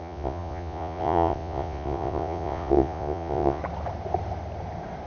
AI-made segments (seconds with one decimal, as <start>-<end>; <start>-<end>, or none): 0.0-3.6